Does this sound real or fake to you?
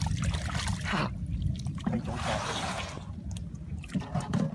real